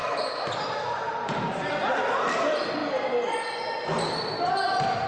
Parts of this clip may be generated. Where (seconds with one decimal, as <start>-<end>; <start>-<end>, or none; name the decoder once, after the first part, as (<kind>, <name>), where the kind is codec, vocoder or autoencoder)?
none